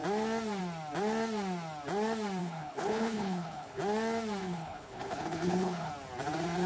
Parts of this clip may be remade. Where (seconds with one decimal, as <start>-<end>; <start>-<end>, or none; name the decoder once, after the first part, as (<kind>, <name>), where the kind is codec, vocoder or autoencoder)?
2.4-3.8 (codec, HILCodec); 4.4-5.9